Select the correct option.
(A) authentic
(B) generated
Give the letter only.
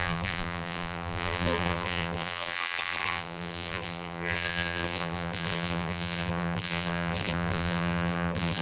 B